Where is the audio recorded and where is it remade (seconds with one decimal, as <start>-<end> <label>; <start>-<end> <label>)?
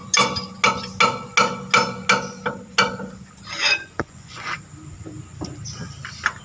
0.0-3.6 recorded; 3.6-4.6 remade; 4.6-6.4 recorded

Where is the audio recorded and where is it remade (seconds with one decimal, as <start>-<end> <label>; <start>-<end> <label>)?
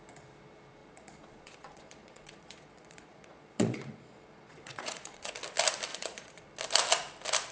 0.0-0.8 recorded; 0.8-5.3 remade; 5.3-5.9 recorded; 5.9-6.4 remade; 6.4-7.5 recorded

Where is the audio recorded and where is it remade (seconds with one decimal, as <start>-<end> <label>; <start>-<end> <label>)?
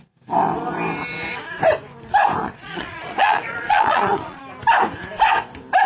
0.0-2.4 recorded; 2.4-4.4 remade; 4.4-5.9 recorded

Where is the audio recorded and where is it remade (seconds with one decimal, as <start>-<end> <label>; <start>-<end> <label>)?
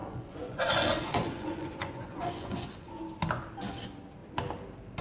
0.0-3.0 remade; 3.0-5.0 recorded